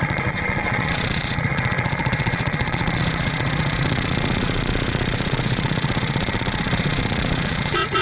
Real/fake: fake